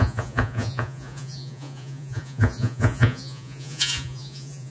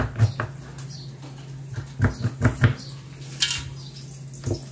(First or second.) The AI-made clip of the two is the first